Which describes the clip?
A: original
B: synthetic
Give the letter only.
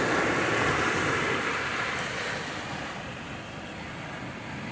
A